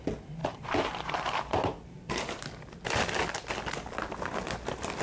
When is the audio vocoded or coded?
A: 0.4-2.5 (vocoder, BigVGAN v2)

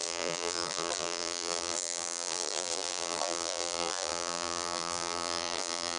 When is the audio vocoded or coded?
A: 0.0-6.0 (vocoder, BigVGAN v2)